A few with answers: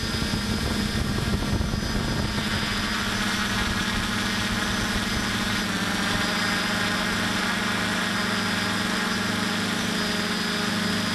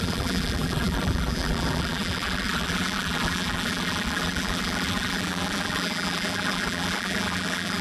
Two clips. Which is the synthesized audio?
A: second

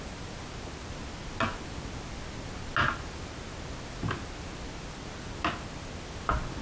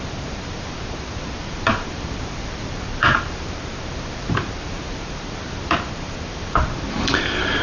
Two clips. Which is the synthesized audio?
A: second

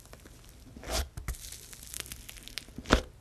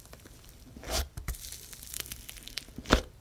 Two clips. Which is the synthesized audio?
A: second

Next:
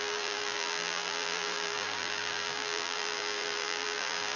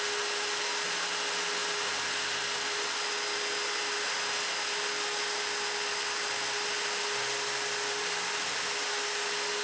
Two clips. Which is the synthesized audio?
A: first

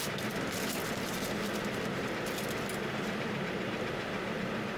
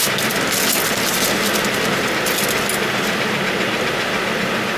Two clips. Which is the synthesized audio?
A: first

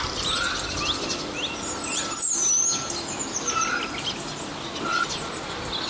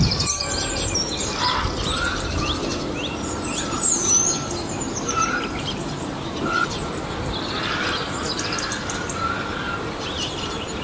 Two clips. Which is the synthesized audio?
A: second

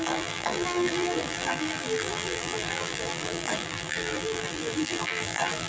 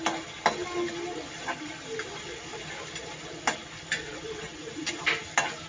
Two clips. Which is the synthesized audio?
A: first